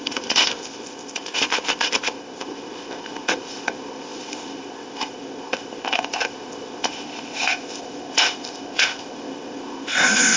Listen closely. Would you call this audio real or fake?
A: fake